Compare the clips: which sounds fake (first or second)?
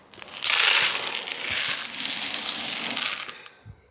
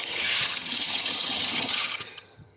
second